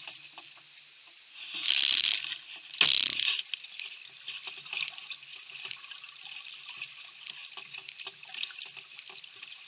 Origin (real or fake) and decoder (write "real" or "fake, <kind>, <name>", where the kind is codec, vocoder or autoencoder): real